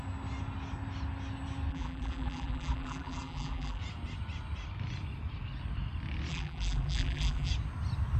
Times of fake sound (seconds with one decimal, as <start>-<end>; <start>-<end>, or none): 1.7-3.8; 6.3-7.5